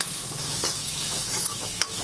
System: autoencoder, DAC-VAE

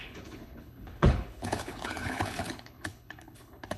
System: codec, HILCodec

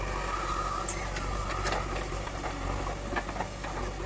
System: none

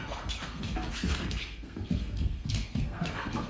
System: codec, SNAC